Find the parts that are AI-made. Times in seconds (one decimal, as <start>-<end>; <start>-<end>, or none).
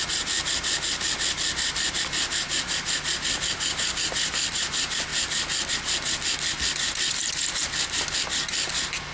none